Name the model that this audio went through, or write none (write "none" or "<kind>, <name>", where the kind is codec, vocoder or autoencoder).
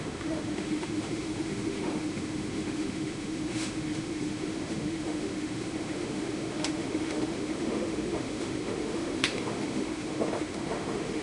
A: autoencoder, DAC-VAE